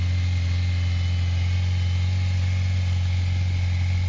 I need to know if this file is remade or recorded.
recorded